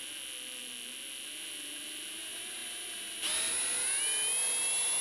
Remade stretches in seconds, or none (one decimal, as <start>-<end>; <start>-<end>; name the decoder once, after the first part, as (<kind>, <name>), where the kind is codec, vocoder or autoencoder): none